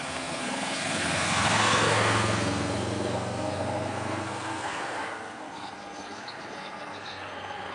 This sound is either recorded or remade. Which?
remade